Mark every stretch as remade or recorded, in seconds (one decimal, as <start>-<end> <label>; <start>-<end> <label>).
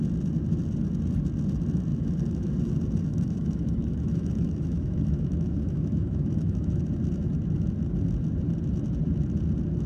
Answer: 0.0-1.9 recorded; 1.9-2.5 remade; 2.5-3.1 recorded; 3.1-6.8 remade; 6.8-9.9 recorded